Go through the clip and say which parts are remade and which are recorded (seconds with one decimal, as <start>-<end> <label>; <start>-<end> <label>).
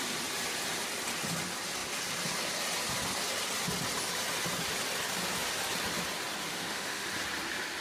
0.0-6.5 recorded; 6.5-7.1 remade; 7.1-7.8 recorded